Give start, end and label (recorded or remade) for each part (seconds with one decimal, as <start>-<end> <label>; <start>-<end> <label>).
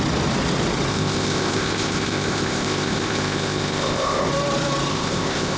0.0-0.9 recorded; 0.9-4.3 remade; 4.3-4.9 recorded; 4.9-5.6 remade